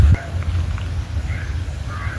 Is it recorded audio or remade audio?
recorded